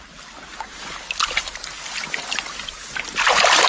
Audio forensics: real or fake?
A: real